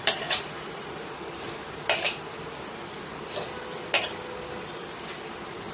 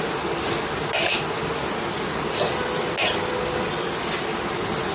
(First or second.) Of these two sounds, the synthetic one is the first